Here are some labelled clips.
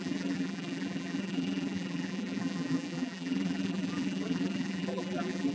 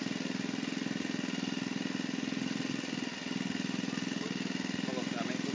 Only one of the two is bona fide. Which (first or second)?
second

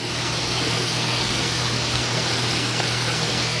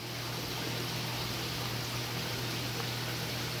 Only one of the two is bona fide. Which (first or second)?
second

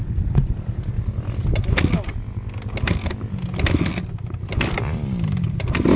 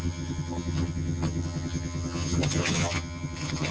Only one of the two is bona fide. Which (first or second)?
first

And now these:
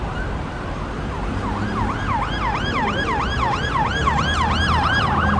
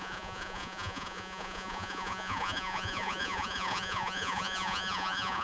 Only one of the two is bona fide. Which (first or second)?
first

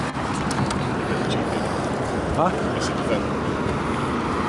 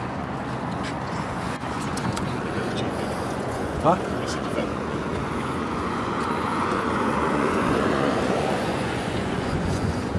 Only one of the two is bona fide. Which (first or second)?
first